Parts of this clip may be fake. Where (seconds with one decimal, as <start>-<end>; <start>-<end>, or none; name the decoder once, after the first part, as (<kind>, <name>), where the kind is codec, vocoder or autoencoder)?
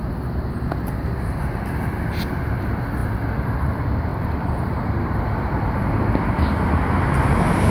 4.1-5.2 (vocoder, BigVGAN v2)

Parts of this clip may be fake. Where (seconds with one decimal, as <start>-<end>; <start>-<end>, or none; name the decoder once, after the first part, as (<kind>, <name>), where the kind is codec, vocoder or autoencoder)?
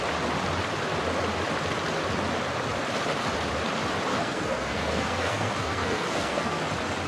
4.1-6.6 (codec, SNAC)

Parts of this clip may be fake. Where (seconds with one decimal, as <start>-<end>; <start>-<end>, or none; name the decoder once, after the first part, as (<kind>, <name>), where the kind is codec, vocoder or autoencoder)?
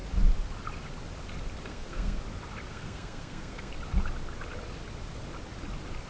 1.7-2.2 (codec, SNAC); 2.7-3.7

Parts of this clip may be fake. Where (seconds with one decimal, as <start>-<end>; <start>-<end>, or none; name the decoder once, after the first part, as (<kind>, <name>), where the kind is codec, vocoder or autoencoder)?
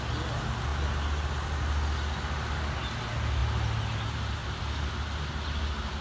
none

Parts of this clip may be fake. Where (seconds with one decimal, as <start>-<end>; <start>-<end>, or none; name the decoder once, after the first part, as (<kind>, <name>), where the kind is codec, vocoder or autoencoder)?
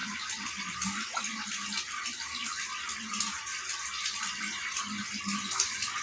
none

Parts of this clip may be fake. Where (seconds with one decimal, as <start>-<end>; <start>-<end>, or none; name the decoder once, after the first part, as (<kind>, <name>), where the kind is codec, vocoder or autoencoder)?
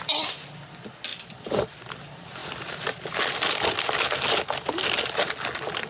none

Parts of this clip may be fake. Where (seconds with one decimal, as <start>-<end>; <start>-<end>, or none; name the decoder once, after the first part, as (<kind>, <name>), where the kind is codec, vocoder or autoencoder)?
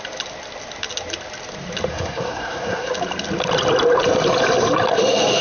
1.9-2.9 (codec, SNAC)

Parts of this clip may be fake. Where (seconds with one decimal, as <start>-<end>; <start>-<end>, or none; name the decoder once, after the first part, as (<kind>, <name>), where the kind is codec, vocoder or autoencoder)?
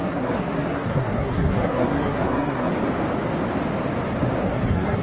0.0-2.7 (codec, SNAC); 4.4-5.0